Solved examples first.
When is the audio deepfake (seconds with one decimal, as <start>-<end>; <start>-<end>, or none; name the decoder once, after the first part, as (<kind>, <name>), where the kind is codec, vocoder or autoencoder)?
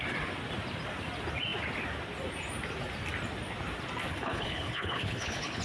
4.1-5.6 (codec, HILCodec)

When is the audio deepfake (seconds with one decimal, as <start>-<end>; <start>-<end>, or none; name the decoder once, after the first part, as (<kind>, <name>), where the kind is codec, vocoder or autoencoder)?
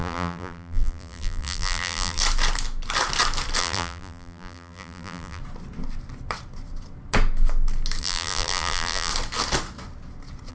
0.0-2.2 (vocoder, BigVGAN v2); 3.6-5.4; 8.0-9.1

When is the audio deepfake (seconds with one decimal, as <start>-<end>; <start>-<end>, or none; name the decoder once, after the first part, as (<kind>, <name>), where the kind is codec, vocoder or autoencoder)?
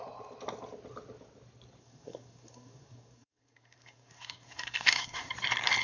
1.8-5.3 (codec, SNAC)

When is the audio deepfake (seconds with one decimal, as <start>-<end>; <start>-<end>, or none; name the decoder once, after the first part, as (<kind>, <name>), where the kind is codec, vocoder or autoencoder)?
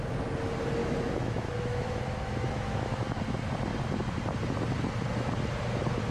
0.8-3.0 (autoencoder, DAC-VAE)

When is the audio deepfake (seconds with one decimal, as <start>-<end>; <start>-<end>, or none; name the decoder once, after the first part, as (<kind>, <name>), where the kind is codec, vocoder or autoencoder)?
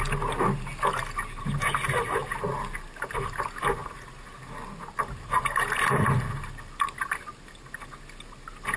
none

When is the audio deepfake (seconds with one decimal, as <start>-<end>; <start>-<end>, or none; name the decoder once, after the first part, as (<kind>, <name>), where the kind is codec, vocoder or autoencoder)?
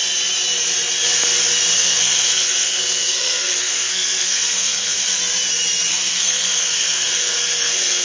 1.7-5.2 (codec, SNAC); 5.9-8.0